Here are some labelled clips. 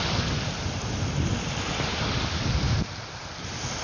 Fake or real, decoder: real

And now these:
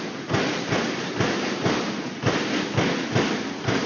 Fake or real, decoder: real